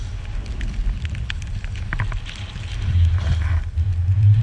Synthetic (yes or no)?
no